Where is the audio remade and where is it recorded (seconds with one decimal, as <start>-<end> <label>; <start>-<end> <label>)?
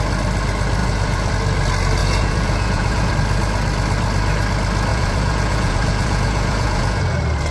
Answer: 0.0-0.8 recorded; 0.8-1.3 remade; 1.3-2.0 recorded; 2.0-3.1 remade; 3.1-4.9 recorded; 4.9-7.0 remade; 7.0-7.5 recorded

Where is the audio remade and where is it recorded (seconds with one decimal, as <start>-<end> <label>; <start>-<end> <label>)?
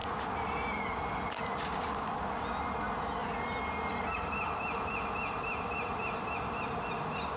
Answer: 0.0-7.4 recorded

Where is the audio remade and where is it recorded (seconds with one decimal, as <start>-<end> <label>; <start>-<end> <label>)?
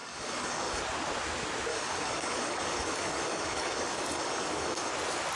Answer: 0.0-0.8 remade; 0.8-1.7 recorded; 1.7-4.9 remade; 4.9-5.4 recorded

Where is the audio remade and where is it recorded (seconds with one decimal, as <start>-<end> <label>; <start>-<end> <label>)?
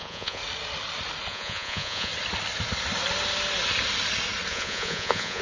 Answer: 0.0-0.4 remade; 0.4-1.3 recorded; 1.3-2.1 remade; 2.1-4.5 recorded; 4.5-5.4 remade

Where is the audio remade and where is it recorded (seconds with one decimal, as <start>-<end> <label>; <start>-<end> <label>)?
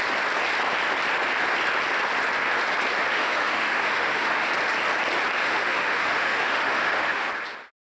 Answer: 0.0-3.1 recorded; 3.1-4.5 remade; 4.5-5.4 recorded; 5.4-7.3 remade; 7.3-8.0 recorded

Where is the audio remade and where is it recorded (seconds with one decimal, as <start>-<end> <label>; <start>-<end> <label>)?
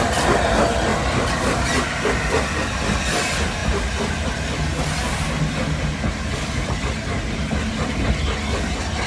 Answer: 0.0-9.1 recorded